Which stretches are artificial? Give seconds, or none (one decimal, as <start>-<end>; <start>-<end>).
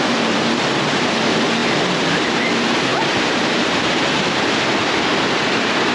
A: 1.6-2.5; 2.9-4.6